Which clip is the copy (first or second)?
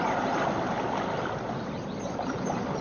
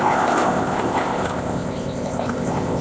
second